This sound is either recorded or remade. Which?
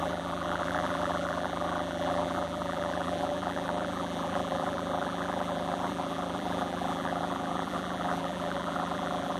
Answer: remade